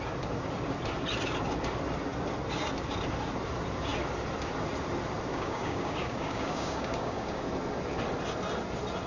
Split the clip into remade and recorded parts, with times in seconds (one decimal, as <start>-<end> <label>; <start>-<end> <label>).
0.0-5.3 recorded; 5.3-7.4 remade; 7.4-9.1 recorded